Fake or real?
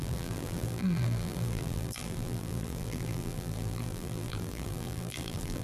fake